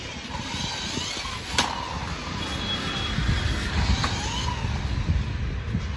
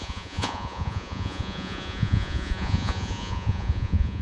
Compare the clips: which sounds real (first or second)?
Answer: first